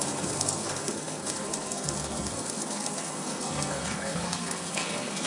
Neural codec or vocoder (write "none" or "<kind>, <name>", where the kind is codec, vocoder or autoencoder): codec, SNAC